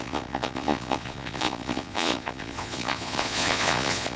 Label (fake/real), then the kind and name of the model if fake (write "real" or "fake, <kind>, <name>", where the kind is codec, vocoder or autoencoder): fake, vocoder, Vocos